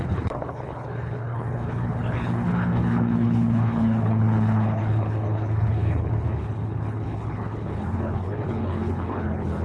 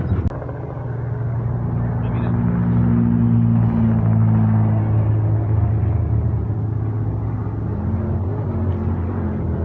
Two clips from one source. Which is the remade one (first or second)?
first